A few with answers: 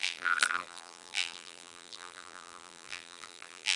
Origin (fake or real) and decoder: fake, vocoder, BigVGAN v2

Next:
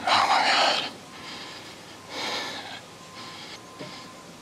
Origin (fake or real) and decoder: real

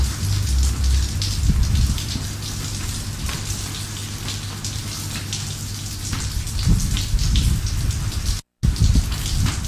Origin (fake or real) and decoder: real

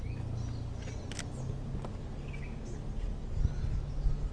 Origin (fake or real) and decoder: real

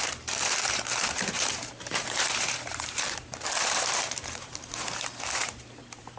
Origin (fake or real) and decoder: fake, vocoder, BigVGAN v2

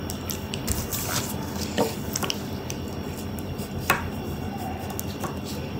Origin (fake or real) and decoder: real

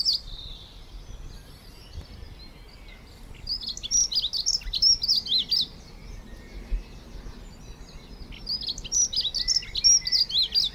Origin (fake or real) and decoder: real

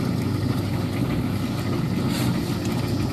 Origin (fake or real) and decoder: real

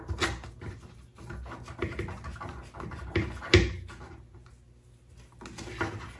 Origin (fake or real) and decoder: real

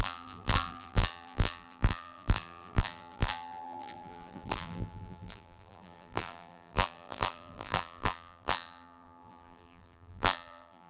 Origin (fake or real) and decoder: fake, vocoder, BigVGAN v2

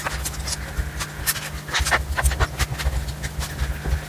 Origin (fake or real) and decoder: real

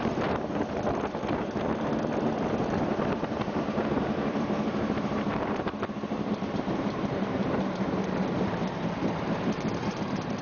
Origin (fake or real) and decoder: fake, vocoder, BigVGAN v2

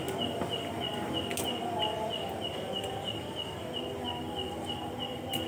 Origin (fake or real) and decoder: real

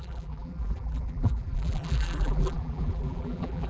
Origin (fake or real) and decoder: fake, vocoder, BigVGAN v2